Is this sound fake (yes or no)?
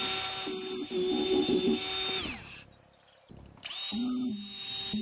no